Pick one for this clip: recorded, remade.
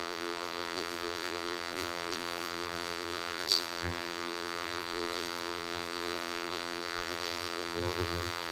remade